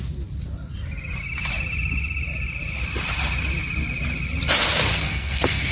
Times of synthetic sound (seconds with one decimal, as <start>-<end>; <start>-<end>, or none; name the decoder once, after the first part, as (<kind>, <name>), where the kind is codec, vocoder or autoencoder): 4.9-5.7 (codec, SNAC)